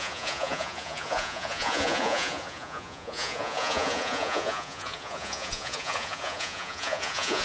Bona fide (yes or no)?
no